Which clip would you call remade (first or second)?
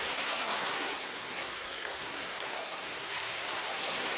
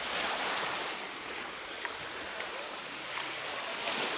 first